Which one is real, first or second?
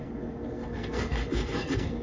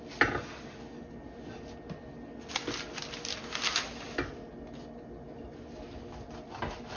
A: second